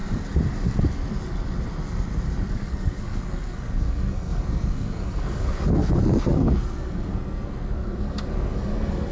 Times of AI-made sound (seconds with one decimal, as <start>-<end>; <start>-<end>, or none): 2.5-9.1